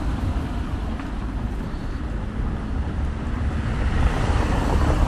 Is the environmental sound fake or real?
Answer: real